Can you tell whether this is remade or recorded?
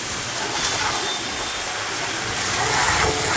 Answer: recorded